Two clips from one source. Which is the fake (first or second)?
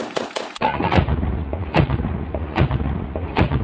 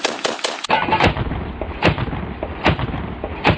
first